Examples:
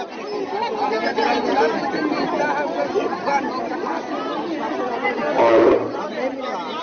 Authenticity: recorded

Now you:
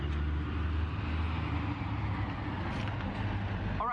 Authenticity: recorded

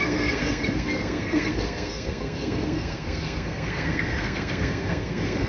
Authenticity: remade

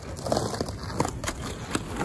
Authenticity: recorded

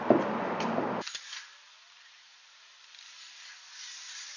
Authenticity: recorded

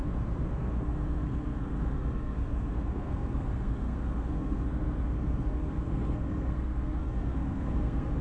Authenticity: remade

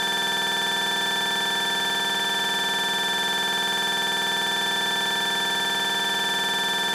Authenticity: recorded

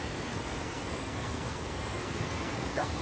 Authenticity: remade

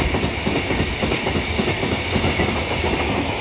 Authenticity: recorded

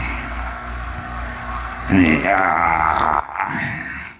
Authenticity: remade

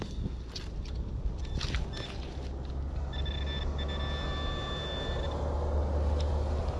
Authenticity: recorded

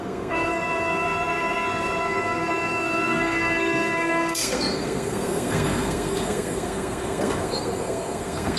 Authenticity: remade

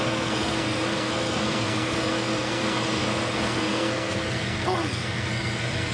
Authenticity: remade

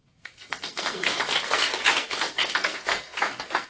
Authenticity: remade